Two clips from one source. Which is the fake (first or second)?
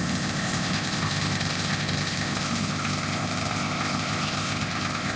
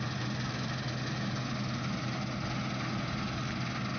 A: first